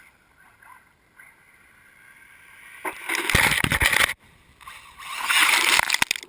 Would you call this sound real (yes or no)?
yes